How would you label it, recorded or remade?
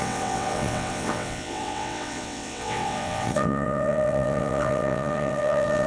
remade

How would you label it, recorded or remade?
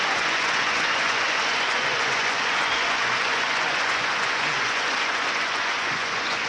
remade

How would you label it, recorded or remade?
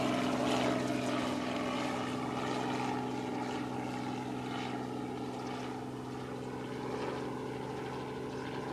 recorded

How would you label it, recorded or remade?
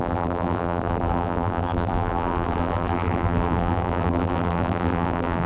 remade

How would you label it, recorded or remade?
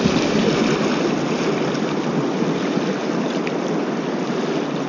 recorded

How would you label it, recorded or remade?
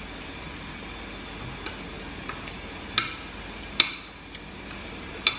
recorded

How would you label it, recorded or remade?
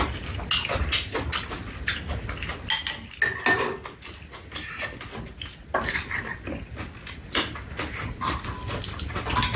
recorded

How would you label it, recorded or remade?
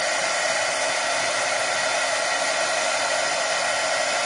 recorded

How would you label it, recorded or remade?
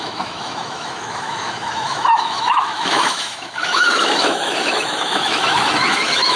remade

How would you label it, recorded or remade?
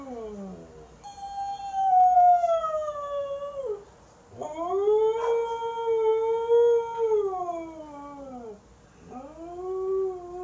recorded